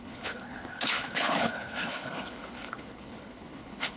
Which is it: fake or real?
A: fake